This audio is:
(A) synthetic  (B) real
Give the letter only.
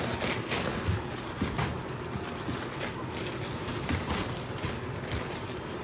B